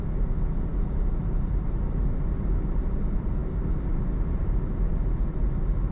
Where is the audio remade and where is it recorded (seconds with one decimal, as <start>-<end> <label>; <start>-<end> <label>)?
0.0-5.9 recorded